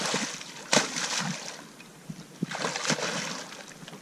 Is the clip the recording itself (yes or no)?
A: yes